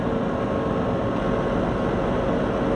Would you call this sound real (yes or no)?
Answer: yes